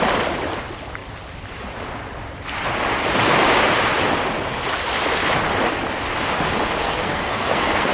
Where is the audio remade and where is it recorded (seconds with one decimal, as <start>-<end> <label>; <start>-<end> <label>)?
0.0-6.8 recorded; 6.8-7.9 remade